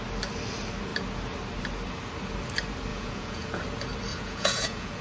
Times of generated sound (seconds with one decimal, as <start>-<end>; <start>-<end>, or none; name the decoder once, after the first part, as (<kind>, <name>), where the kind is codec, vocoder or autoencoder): 2.9-3.6 (vocoder, Vocos); 4.1-5.0